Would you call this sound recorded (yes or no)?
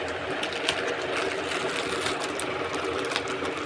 yes